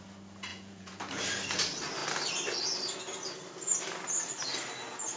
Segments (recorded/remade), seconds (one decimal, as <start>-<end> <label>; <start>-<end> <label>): 0.0-0.5 recorded; 0.5-1.0 remade; 1.0-5.2 recorded